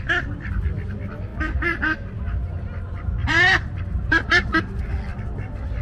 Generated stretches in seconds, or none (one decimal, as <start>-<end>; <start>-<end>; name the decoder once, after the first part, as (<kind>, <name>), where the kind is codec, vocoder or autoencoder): 3.2-4.5 (vocoder, BigVGAN v2)